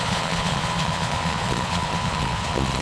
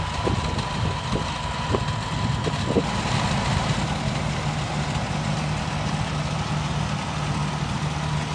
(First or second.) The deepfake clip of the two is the first